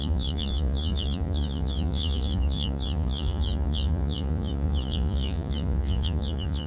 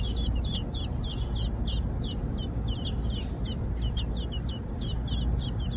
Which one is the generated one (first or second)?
first